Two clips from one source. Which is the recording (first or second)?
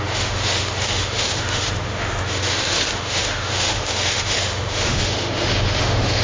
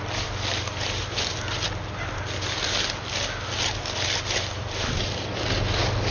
second